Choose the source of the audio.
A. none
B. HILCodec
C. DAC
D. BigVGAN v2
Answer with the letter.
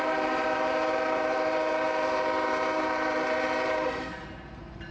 D